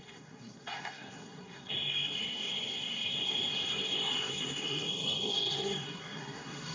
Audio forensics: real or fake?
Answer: fake